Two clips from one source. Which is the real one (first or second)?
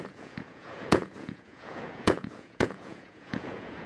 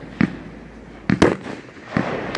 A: second